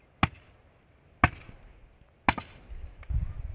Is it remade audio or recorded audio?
recorded